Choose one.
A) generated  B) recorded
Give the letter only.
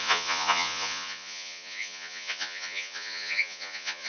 A